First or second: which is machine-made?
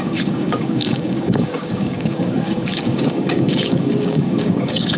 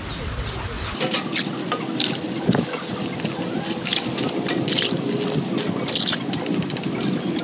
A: first